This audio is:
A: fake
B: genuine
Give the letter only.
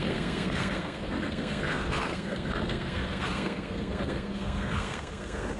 A